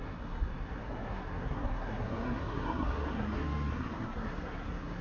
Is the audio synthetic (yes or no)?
yes